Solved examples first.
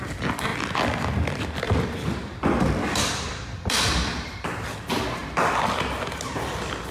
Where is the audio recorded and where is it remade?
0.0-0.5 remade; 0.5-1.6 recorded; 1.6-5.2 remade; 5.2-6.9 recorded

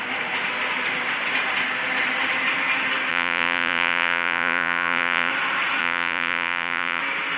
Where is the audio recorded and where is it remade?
0.0-3.1 recorded; 3.1-5.3 remade; 5.3-5.8 recorded; 5.8-7.0 remade; 7.0-7.4 recorded

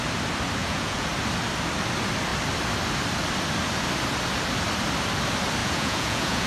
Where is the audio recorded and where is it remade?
0.0-0.6 recorded; 0.6-1.1 remade; 1.1-5.6 recorded; 5.6-6.5 remade

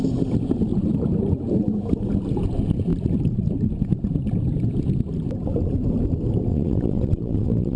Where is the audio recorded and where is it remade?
0.0-6.5 recorded; 6.5-7.8 remade

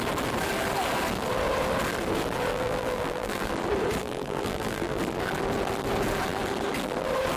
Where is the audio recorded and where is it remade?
0.0-2.5 recorded; 2.5-3.5 remade; 3.5-4.0 recorded; 4.0-5.0 remade; 5.0-7.4 recorded

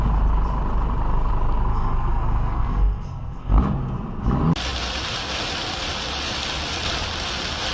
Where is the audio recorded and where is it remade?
0.0-1.7 recorded; 1.7-3.6 remade; 3.6-7.7 recorded